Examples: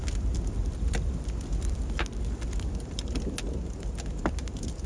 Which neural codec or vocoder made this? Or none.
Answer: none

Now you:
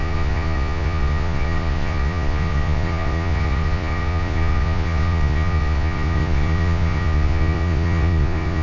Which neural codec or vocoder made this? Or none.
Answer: vocoder, Vocos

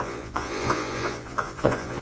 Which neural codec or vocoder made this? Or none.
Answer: vocoder, Vocos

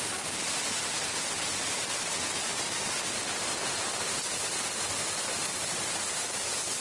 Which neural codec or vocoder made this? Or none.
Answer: none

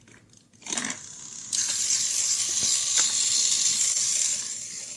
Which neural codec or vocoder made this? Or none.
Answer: none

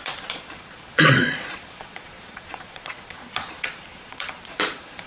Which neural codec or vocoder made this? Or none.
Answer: vocoder, Vocos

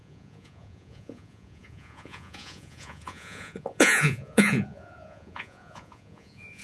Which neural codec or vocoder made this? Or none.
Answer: vocoder, Vocos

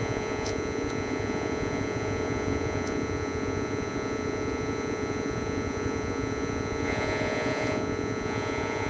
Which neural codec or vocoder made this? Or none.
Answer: vocoder, Vocos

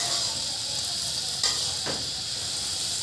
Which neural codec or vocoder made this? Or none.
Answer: none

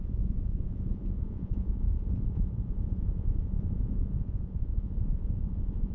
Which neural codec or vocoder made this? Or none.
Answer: vocoder, Vocos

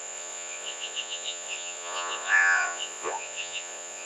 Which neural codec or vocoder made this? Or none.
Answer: vocoder, Vocos